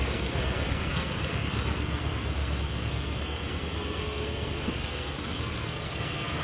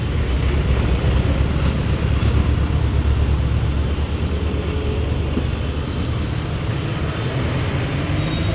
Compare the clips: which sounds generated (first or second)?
first